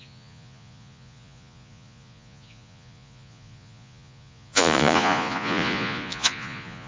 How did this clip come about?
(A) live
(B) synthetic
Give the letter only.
B